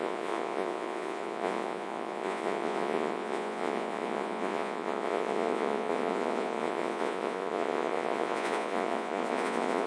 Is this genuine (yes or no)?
no